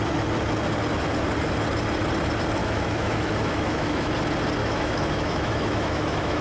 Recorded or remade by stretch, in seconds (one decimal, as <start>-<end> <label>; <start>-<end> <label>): 0.0-2.6 recorded; 2.6-4.1 remade; 4.1-4.6 recorded; 4.6-6.4 remade